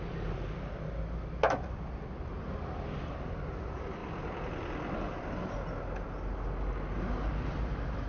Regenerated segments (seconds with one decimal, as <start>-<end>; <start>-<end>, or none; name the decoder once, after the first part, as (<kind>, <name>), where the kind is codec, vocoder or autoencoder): none